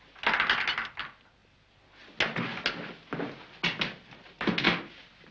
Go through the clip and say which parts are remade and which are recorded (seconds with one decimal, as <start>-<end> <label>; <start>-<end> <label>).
0.0-5.3 recorded